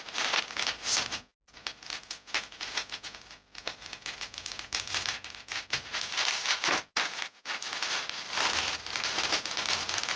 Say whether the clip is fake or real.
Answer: real